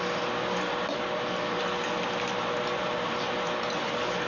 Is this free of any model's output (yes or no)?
yes